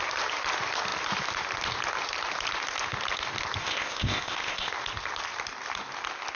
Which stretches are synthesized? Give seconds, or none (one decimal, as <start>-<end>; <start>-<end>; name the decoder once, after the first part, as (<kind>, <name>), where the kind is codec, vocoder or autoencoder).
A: 3.6-4.7 (codec, ZipCodec)